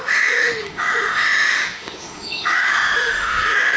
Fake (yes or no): yes